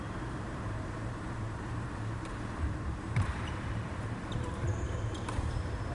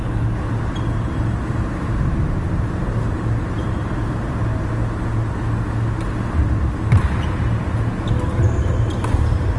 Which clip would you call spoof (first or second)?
first